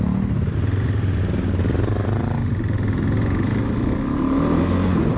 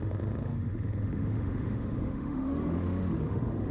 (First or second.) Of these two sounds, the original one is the first